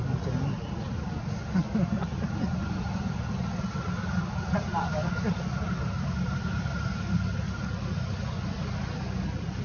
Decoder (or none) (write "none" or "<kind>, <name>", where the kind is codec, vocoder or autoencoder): none